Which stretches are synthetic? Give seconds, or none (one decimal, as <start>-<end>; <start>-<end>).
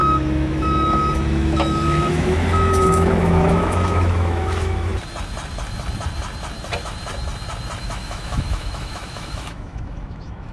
0.0-4.9; 7.8-10.5